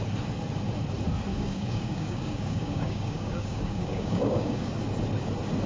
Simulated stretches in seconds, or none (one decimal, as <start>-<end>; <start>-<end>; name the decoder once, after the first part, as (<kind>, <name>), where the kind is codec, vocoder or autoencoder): 1.3-4.7 (codec, DAC)